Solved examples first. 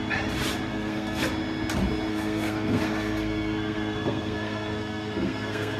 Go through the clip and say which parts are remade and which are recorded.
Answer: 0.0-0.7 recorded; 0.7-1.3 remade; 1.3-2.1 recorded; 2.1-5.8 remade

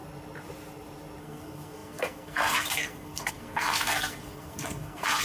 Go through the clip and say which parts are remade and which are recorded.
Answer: 0.0-1.2 recorded; 1.2-5.2 remade

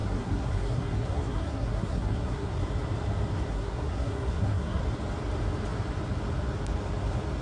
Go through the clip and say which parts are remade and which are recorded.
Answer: 0.0-2.5 remade; 2.5-3.5 recorded; 3.5-4.8 remade; 4.8-7.4 recorded

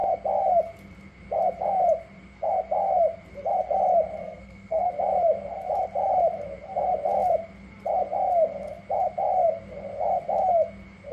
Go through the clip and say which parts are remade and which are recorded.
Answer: 0.0-4.2 recorded; 4.2-4.9 remade; 4.9-11.1 recorded

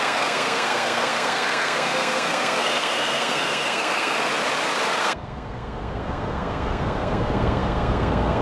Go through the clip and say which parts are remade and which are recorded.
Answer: 0.0-4.3 remade; 4.3-5.0 recorded; 5.0-8.4 remade

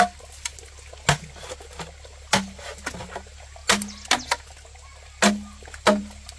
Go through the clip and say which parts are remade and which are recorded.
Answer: 0.0-6.4 recorded